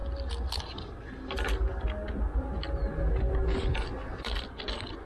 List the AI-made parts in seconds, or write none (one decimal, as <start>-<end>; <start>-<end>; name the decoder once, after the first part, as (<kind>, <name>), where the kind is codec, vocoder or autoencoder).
none